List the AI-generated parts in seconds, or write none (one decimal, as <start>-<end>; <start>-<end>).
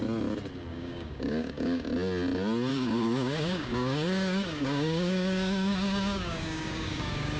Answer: 0.7-1.9; 2.7-7.4